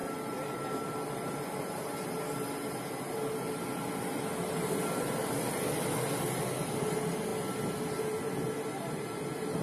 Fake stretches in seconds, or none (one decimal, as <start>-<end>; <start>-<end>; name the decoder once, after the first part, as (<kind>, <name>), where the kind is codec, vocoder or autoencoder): none